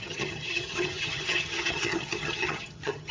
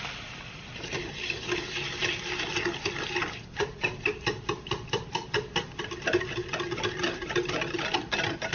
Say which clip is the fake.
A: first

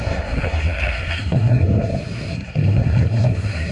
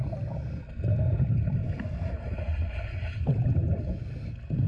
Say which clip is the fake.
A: first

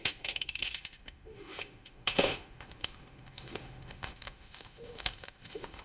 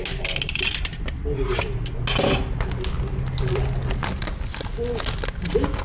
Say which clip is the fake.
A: first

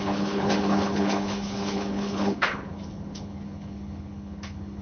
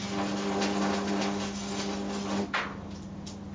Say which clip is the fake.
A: first